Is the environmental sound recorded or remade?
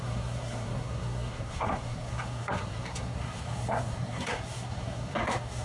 remade